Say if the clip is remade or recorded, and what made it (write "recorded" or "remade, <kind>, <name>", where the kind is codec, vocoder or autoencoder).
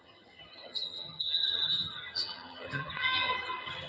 remade, vocoder, HiFi-GAN